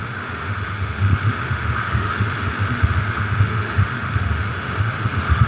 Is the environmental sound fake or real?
fake